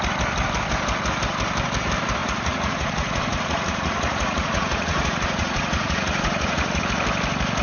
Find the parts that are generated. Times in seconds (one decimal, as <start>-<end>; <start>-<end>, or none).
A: 2.2-6.8